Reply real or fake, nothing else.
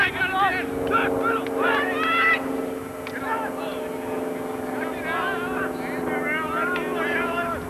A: real